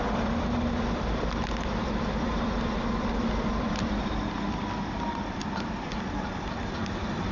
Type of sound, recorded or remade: recorded